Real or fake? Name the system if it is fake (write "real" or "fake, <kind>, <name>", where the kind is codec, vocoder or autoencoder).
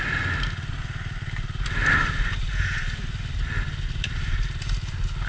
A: real